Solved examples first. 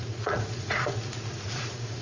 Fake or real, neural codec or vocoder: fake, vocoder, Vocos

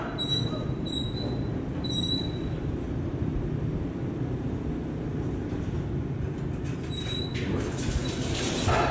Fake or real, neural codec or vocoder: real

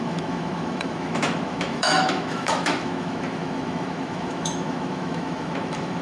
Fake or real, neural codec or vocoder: fake, autoencoder, DAC-VAE